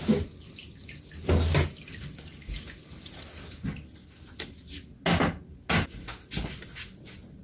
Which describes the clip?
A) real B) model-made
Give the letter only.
A